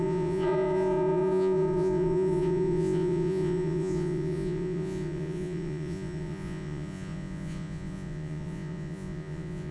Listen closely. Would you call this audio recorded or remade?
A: remade